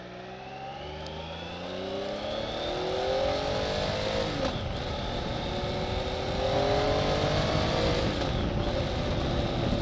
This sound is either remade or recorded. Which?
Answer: recorded